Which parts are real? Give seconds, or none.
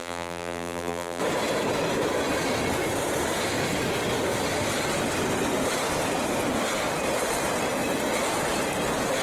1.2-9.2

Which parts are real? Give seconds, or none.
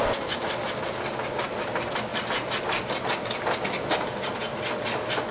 0.0-5.3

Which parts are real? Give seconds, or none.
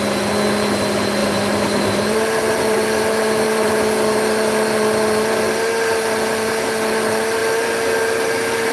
0.0-1.2; 3.7-8.7